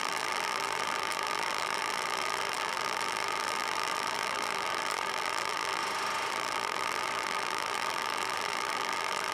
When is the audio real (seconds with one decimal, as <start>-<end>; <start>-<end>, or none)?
5.8-6.3